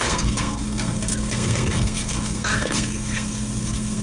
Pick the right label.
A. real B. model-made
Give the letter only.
B